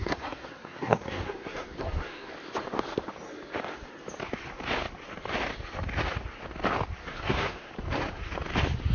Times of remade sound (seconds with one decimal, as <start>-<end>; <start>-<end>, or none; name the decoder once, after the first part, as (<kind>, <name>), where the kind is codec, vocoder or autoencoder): 0.0-2.3 (codec, SNAC); 7.0-7.7